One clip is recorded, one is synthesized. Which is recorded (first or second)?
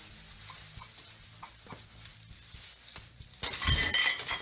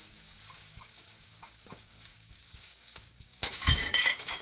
first